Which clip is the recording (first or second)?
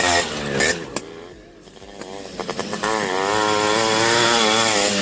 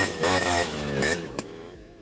first